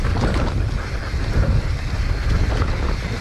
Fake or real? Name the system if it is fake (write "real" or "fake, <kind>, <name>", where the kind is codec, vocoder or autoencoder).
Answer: real